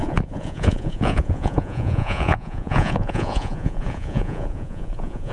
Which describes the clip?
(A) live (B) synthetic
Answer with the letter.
B